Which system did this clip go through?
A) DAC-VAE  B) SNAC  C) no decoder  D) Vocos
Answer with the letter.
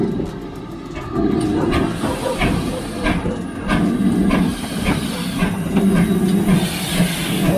C